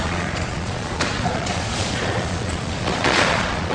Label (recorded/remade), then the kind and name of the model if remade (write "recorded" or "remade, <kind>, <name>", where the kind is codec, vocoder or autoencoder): remade, vocoder, Vocos